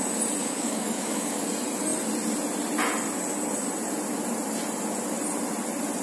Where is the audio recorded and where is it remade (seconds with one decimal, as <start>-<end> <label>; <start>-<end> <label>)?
0.0-0.4 recorded; 0.4-1.5 remade; 1.5-6.0 recorded